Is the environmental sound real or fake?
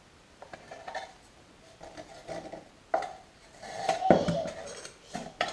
real